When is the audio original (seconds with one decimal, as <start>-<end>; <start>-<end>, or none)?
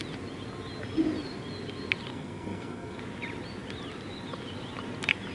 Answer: 0.0-2.1; 3.0-5.3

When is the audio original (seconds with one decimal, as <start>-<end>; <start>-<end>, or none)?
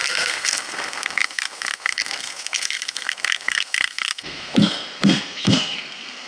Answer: none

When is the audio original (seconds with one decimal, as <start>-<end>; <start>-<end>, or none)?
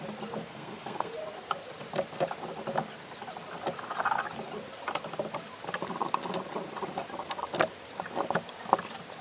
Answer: 0.0-0.5; 1.1-9.2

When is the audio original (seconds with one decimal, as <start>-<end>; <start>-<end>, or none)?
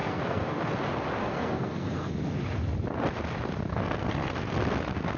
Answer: 0.6-1.2; 2.1-3.7; 4.3-5.2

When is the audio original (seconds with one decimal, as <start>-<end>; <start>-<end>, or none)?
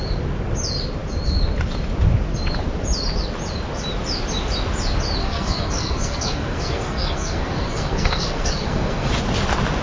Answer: 0.0-5.2; 9.1-9.8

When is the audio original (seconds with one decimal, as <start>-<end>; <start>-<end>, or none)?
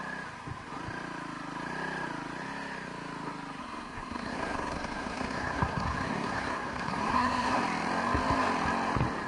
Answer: 0.0-3.6; 7.6-9.3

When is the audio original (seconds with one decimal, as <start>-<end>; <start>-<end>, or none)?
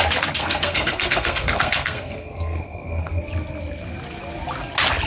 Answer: 0.0-0.4; 3.2-5.1